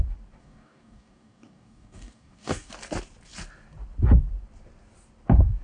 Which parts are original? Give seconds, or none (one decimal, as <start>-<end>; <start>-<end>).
0.0-0.4; 2.7-5.6